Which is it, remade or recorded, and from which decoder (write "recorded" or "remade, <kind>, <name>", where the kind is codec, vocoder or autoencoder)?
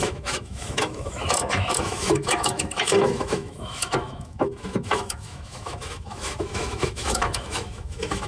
remade, autoencoder, DAC-VAE